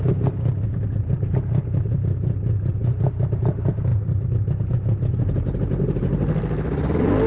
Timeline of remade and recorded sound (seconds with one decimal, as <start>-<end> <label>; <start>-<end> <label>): 0.0-7.3 recorded

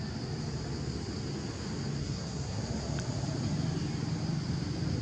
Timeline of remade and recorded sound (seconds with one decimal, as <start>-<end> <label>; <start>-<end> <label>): 0.0-2.0 recorded; 2.0-2.6 remade; 2.6-5.0 recorded

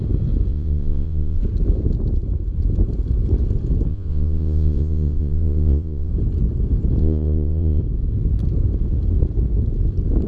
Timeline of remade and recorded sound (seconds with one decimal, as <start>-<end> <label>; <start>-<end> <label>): 0.0-0.5 recorded; 0.5-1.4 remade; 1.4-3.9 recorded; 3.9-6.1 remade; 6.1-7.0 recorded; 7.0-7.8 remade; 7.8-10.3 recorded

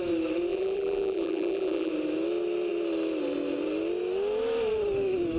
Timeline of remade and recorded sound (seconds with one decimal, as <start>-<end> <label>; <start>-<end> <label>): 0.0-0.5 recorded; 0.5-1.9 remade; 1.9-5.4 recorded